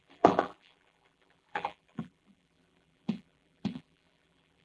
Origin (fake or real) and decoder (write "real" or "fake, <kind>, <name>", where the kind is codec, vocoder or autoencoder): fake, vocoder, BigVGAN v2